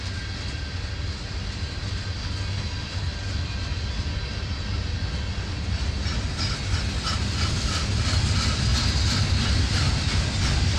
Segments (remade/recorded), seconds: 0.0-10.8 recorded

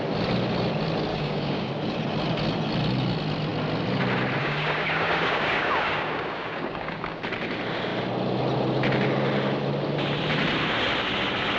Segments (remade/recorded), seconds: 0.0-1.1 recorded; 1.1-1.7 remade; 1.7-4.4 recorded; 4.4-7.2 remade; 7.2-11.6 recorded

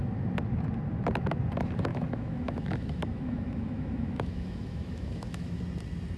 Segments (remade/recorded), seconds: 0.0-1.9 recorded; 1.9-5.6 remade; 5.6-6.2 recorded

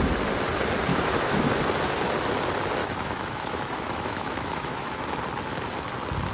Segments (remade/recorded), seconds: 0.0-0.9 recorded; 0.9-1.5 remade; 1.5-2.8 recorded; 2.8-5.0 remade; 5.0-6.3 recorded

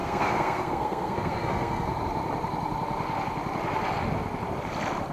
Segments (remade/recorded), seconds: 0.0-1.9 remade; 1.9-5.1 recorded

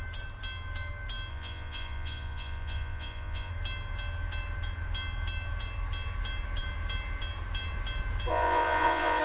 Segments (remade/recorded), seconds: 0.0-1.3 recorded; 1.3-3.5 remade; 3.5-8.3 recorded; 8.3-9.2 remade

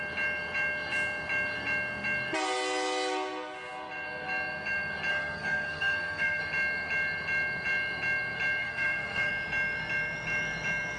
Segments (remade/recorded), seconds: 0.0-5.1 recorded; 5.1-6.4 remade; 6.4-8.6 recorded; 8.6-9.3 remade; 9.3-11.0 recorded

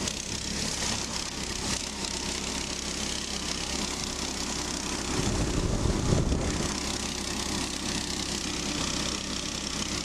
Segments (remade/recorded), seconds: 0.0-1.8 recorded; 1.8-2.5 remade; 2.5-10.0 recorded